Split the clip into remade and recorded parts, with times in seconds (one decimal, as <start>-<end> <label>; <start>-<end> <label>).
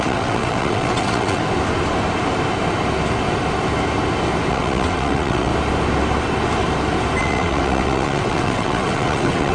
0.0-1.4 remade; 1.4-4.5 recorded; 4.5-5.5 remade; 5.5-7.2 recorded; 7.2-9.5 remade